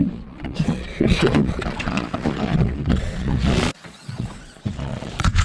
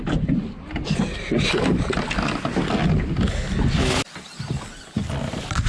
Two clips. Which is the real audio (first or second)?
second